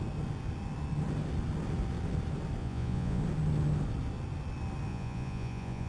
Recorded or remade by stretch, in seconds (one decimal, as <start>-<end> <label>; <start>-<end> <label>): 0.0-2.6 recorded; 2.6-3.2 remade; 3.2-4.9 recorded; 4.9-5.9 remade

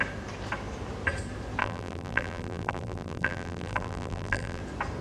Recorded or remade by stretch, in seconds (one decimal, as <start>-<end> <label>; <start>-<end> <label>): 0.0-1.6 recorded; 1.6-4.6 remade; 4.6-5.0 recorded